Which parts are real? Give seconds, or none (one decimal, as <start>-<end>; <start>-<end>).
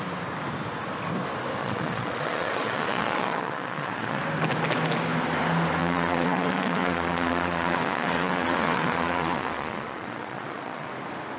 0.0-1.6; 4.2-5.8; 10.9-11.4